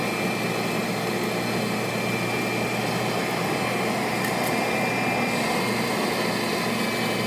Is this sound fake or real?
real